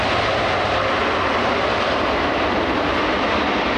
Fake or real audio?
real